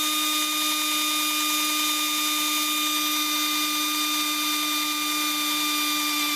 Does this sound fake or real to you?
real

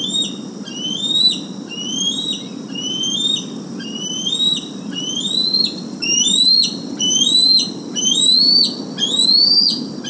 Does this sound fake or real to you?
real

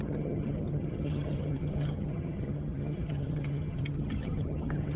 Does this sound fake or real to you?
fake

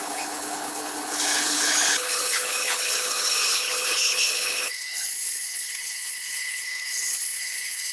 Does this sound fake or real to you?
fake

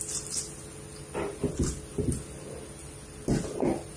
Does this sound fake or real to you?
real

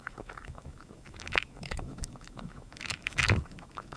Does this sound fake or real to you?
fake